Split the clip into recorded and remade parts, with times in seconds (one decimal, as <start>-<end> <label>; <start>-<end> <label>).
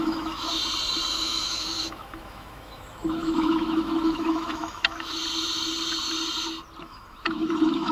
0.0-0.6 remade; 0.6-1.1 recorded; 1.1-5.2 remade; 5.2-6.8 recorded; 6.8-7.9 remade